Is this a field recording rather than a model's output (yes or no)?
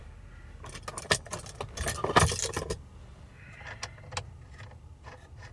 yes